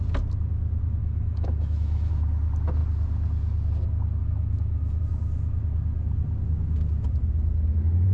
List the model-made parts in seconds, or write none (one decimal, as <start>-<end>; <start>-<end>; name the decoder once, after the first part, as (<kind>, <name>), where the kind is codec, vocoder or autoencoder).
1.0-2.1 (autoencoder, DAC-VAE); 4.2-5.0